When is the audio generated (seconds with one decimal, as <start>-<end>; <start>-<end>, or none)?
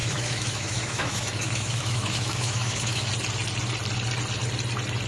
0.0-3.1